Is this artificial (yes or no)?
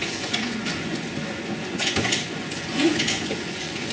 yes